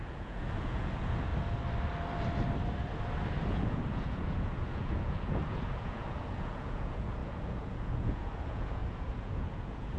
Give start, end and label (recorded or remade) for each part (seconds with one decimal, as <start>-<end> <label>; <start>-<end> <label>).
0.0-1.3 remade; 1.3-3.4 recorded; 3.4-10.0 remade